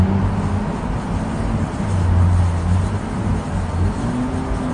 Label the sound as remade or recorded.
recorded